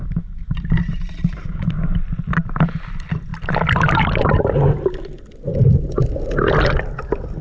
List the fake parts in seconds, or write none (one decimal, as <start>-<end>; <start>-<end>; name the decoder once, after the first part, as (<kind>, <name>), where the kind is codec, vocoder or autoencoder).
none